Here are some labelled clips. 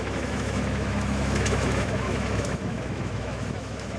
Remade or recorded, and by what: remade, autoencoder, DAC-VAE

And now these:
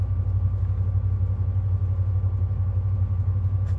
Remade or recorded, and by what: recorded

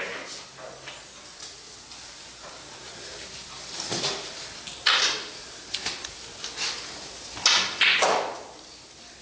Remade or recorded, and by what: recorded